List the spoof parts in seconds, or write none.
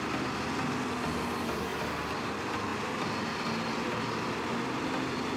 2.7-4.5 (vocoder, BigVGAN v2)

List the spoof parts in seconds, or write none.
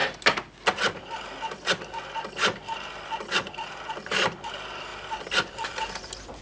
4.9-5.9 (vocoder, BigVGAN v2)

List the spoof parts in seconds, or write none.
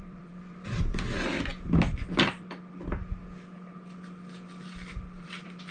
0.0-1.5 (vocoder, BigVGAN v2); 4.9-5.7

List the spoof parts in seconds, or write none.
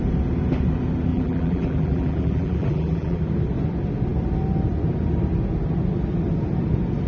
1.1-3.2 (vocoder, BigVGAN v2)